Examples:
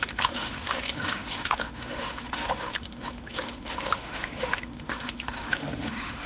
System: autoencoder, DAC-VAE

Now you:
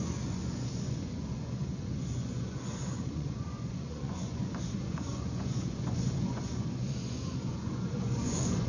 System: vocoder, Vocos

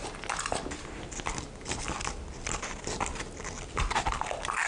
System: none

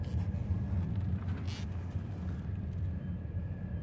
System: none